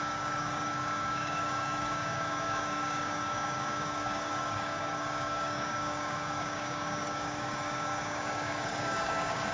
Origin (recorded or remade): remade